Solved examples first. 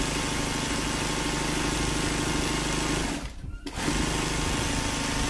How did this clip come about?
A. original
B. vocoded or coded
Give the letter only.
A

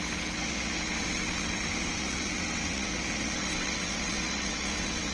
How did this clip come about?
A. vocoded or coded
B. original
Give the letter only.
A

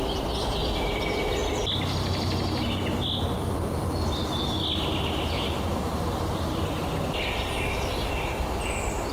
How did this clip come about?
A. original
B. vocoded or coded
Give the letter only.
A